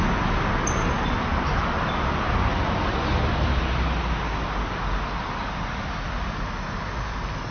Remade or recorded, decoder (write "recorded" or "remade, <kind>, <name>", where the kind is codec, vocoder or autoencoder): recorded